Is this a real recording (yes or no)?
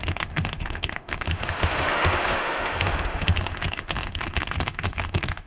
no